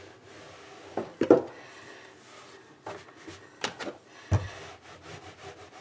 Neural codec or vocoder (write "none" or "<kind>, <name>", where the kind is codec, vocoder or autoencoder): none